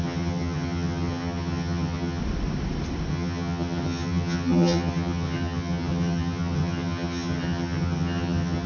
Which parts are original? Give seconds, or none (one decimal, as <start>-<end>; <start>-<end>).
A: 2.2-3.1